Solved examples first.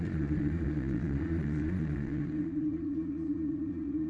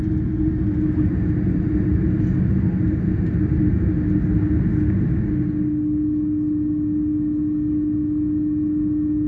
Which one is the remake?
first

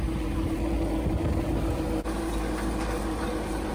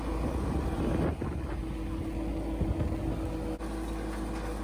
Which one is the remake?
first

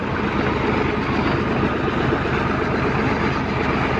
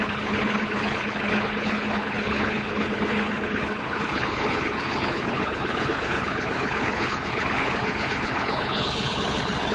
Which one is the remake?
second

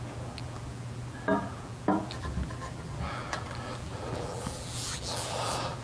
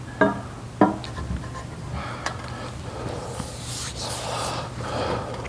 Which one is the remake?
first